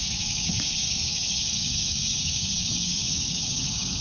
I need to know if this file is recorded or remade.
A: remade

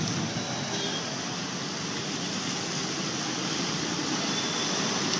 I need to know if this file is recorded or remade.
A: recorded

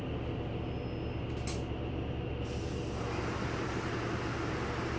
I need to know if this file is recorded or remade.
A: recorded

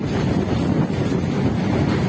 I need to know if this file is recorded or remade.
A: recorded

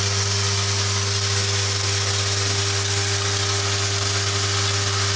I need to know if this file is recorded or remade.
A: recorded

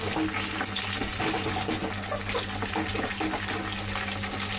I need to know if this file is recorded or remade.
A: recorded